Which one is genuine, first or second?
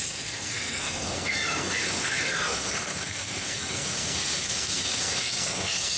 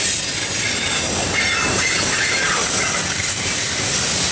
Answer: second